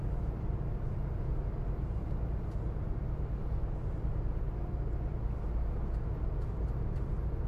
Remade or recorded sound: recorded